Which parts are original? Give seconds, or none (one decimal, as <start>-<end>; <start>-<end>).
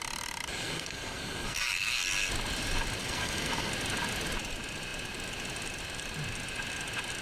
0.0-0.6; 2.3-3.0; 3.7-7.2